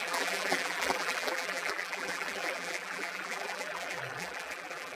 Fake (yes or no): yes